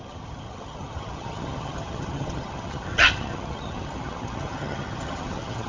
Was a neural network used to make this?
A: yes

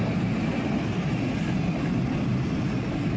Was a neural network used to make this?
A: no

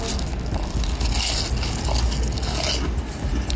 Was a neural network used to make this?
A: no